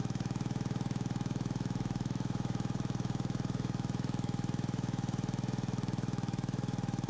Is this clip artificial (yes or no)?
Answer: yes